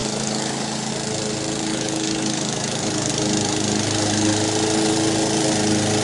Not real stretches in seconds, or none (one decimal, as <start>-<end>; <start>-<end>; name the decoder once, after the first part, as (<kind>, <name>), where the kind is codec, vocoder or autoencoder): 0.0-0.9 (codec, DAC); 1.7-3.1